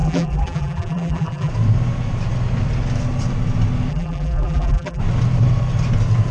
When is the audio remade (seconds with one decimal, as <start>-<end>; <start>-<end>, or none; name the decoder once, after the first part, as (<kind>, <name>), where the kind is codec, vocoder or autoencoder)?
0.0-1.5 (vocoder, BigVGAN v2); 3.9-5.0